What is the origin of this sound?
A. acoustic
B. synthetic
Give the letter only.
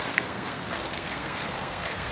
B